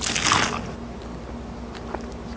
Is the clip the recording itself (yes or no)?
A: yes